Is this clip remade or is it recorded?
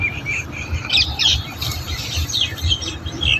remade